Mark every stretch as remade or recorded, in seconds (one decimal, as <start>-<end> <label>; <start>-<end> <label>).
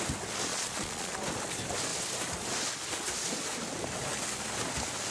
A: 0.0-0.5 recorded; 0.5-1.1 remade; 1.1-5.1 recorded